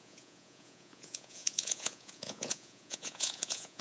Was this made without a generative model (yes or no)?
no